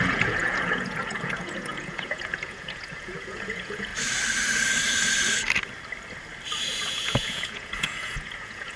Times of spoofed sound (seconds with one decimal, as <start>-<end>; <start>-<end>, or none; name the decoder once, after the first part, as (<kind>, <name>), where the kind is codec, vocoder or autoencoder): 0.0-3.9 (vocoder, Vocos); 6.6-8.8